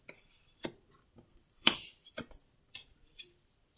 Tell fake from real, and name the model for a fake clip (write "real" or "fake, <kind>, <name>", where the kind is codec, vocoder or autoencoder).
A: fake, vocoder, BigVGAN v2